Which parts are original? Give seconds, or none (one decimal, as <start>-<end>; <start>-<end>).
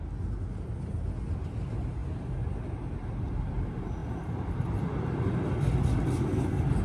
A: 0.0-6.8